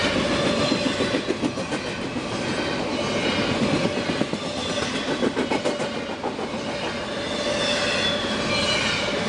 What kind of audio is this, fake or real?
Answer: real